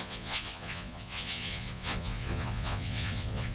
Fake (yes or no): yes